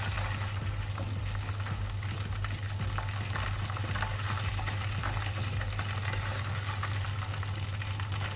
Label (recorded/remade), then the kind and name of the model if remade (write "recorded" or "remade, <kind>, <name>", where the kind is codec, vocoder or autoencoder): recorded